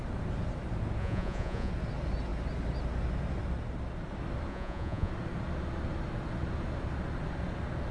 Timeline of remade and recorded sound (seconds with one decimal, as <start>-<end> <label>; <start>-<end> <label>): 0.0-1.0 recorded; 1.0-1.7 remade; 1.7-4.5 recorded; 4.5-5.1 remade; 5.1-7.9 recorded